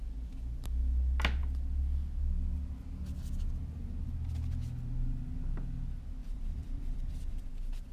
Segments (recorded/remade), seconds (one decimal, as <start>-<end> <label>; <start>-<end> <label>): 0.0-6.2 recorded; 6.2-7.5 remade; 7.5-7.9 recorded

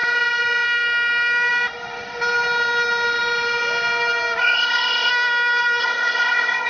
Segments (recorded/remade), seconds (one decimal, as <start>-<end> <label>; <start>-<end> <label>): 0.0-4.4 recorded; 4.4-5.1 remade; 5.1-5.8 recorded; 5.8-6.7 remade

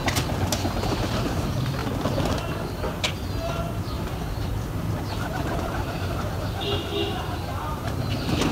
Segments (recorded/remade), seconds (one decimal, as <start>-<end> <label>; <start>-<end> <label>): 0.0-0.8 recorded; 0.8-1.8 remade; 1.8-5.6 recorded; 5.6-6.9 remade; 6.9-7.5 recorded; 7.5-8.5 remade

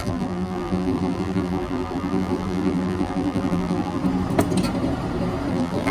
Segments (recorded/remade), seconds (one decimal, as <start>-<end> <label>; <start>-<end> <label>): 0.0-4.0 remade; 4.0-5.5 recorded; 5.5-5.9 remade

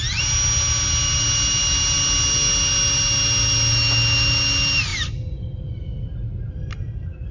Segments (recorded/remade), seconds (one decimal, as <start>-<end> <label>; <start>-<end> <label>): 0.0-7.3 recorded